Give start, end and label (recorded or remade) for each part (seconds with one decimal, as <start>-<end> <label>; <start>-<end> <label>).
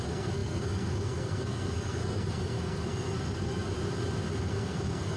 0.0-3.7 remade; 3.7-4.4 recorded; 4.4-5.2 remade